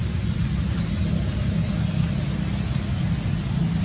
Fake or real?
real